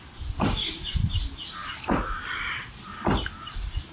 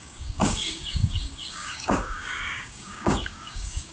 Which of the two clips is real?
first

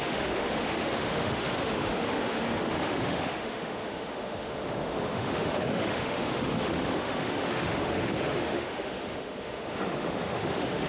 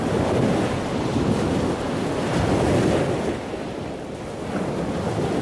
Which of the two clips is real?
second